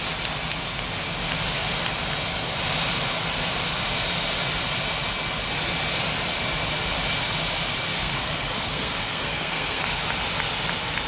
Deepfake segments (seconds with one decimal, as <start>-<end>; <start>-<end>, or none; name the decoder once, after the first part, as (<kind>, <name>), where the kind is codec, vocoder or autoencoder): 7.9-10.0 (codec, SNAC)